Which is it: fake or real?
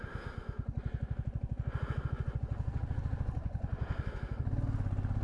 real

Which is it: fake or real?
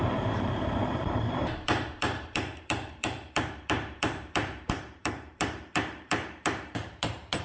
fake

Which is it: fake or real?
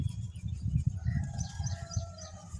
fake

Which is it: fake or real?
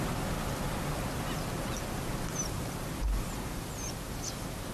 real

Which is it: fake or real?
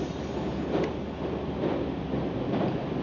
real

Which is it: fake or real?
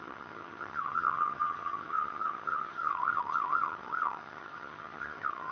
fake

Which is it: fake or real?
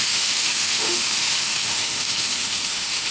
fake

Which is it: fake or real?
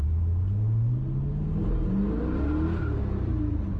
real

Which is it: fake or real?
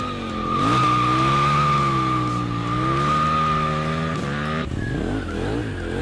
real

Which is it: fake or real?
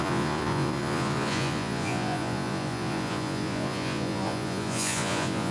fake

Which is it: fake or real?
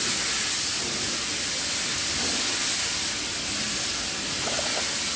real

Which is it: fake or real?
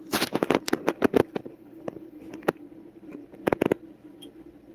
fake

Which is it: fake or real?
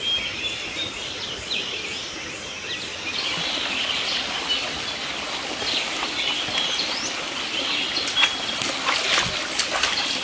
real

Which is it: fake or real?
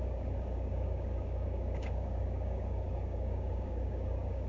fake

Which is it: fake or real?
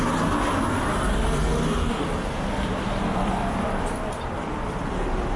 real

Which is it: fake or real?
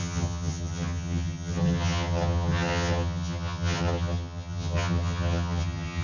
fake